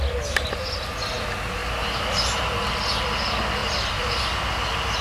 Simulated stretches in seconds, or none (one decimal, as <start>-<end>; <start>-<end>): 1.6-2.7; 3.6-4.4